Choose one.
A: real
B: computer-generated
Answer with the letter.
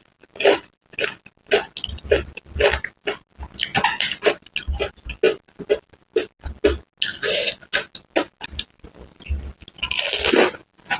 A